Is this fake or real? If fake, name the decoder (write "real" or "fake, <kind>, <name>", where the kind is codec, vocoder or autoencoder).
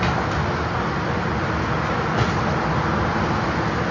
real